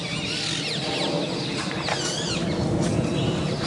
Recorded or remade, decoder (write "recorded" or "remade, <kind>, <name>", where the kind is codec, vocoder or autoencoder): recorded